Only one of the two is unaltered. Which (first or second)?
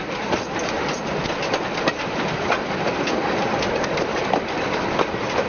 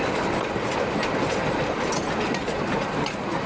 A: second